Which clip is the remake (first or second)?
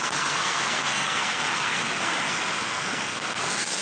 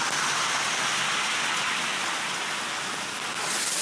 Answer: first